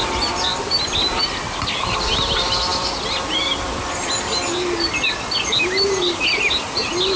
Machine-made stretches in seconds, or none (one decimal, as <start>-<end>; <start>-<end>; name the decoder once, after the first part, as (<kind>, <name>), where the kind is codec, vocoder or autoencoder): none